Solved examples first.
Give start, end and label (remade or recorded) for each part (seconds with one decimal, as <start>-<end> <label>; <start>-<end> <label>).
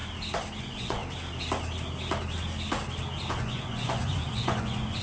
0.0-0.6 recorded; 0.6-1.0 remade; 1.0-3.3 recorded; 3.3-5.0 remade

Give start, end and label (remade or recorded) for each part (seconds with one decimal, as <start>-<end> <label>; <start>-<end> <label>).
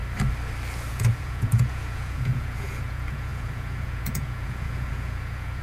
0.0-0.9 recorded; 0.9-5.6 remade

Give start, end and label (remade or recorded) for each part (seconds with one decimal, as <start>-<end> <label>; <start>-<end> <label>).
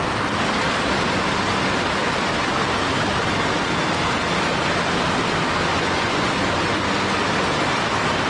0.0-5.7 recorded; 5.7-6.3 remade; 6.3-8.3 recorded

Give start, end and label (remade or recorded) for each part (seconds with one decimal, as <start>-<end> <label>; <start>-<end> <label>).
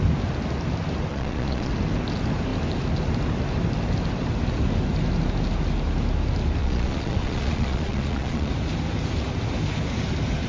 0.0-1.1 recorded; 1.1-1.7 remade; 1.7-6.6 recorded; 6.6-8.5 remade; 8.5-10.5 recorded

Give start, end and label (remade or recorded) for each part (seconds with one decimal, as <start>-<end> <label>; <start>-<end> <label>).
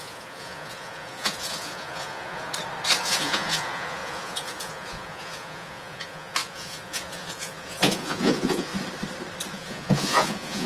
0.0-2.5 remade; 2.5-3.0 recorded; 3.0-8.7 remade; 8.7-9.5 recorded; 9.5-10.7 remade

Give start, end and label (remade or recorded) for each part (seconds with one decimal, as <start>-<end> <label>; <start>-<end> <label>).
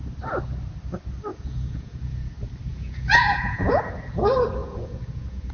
0.0-1.3 recorded; 1.3-2.3 remade; 2.3-2.7 recorded; 2.7-3.8 remade; 3.8-4.6 recorded; 4.6-5.5 remade